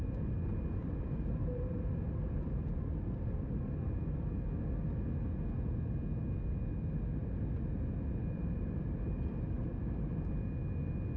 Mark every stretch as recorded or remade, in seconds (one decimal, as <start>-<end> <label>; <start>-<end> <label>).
0.0-0.8 recorded; 0.8-4.0 remade; 4.0-8.2 recorded; 8.2-10.3 remade; 10.3-11.2 recorded